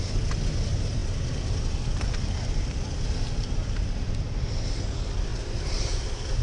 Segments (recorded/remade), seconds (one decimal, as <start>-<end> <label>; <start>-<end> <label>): 0.0-6.4 recorded